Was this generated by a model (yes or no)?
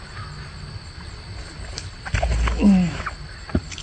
no